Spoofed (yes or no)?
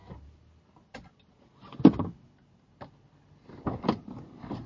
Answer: no